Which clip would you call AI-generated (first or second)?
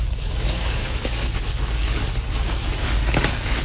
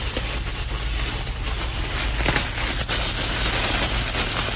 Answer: first